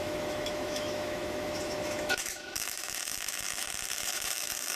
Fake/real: fake